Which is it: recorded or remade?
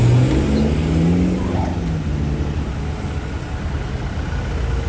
recorded